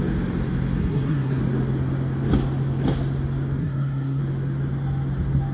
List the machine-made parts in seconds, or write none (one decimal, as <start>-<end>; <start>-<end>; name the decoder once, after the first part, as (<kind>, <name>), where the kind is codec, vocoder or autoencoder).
0.8-1.4 (codec, SNAC); 3.6-4.2